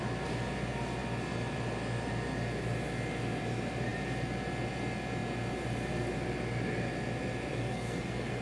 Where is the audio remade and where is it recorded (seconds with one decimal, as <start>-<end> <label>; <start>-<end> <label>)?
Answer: 0.0-7.5 recorded; 7.5-8.4 remade